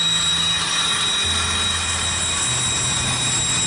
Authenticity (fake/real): real